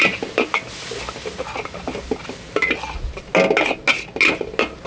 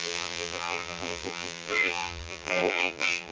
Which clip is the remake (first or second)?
second